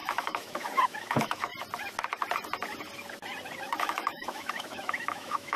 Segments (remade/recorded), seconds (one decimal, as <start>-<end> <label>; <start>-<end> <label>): 0.0-1.5 remade; 1.5-3.8 recorded; 3.8-5.6 remade